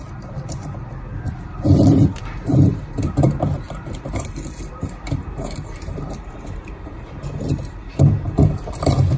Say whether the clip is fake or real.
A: fake